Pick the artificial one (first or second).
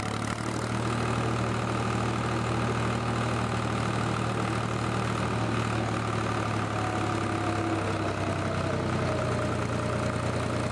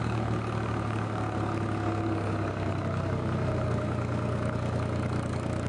second